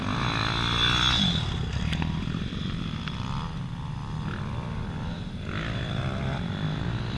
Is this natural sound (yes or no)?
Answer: yes